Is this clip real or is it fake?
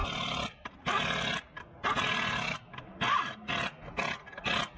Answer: real